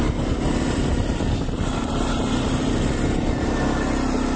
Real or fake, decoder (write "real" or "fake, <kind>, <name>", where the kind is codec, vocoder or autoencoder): real